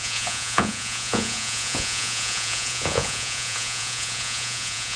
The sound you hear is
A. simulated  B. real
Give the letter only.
A